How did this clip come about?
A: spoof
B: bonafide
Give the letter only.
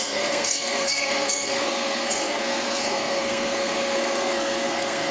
A